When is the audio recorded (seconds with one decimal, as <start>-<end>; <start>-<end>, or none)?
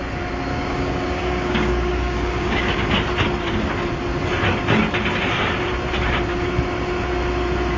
0.0-0.5; 2.8-7.8